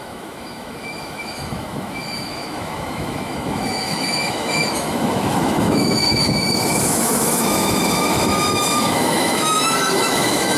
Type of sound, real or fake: fake